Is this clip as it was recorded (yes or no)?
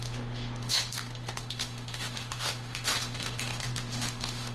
no